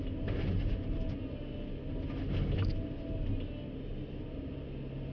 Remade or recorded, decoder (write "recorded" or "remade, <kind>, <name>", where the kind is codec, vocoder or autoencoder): recorded